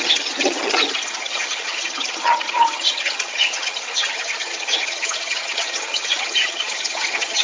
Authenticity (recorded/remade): remade